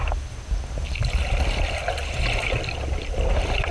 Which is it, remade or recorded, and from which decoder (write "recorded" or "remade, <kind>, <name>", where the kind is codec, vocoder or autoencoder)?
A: recorded